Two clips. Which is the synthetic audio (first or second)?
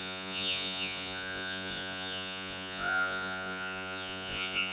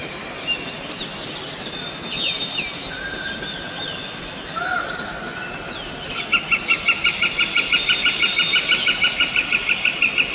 first